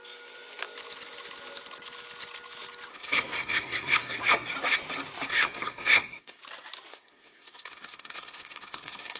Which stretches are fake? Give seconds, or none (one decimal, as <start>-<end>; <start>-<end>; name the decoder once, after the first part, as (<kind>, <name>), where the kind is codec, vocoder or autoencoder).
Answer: 2.9-4.2 (codec, SNAC); 5.3-6.4; 6.9-9.2